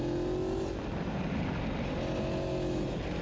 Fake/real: real